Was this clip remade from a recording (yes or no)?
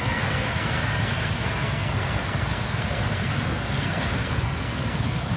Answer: yes